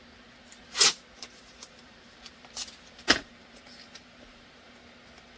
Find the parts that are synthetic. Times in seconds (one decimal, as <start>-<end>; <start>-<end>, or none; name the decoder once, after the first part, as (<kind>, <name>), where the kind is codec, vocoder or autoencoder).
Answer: 1.4-4.6 (vocoder, BigVGAN v2)